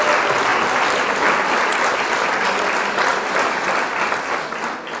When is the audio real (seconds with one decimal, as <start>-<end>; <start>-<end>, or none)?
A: 0.0-3.1; 3.9-5.0